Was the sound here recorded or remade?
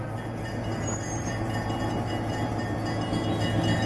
recorded